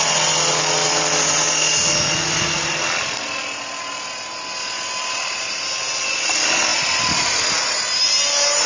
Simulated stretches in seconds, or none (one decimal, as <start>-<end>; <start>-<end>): none